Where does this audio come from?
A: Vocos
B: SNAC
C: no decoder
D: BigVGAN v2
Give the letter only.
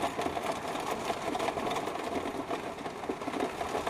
C